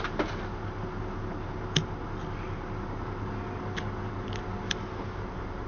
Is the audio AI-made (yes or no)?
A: no